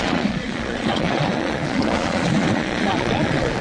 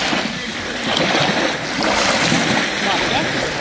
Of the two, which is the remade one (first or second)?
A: first